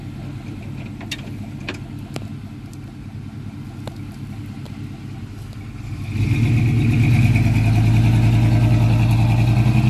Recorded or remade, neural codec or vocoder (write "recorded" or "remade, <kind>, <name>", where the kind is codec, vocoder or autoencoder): recorded